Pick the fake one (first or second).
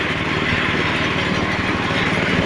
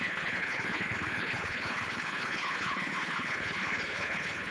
second